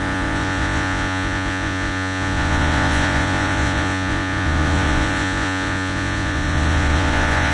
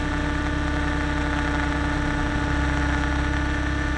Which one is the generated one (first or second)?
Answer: first